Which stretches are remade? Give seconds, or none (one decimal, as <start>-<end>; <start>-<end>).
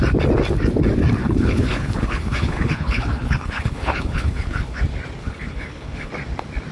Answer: 1.2-4.8; 5.2-6.1